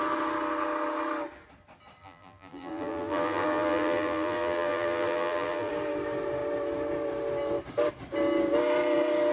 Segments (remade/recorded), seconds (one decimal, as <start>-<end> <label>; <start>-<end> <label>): 0.0-2.0 recorded; 2.0-5.7 remade; 5.7-9.3 recorded